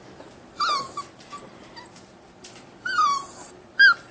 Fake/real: real